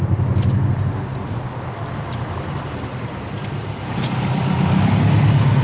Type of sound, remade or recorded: recorded